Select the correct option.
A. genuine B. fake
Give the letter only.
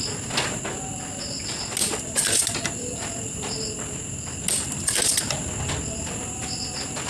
A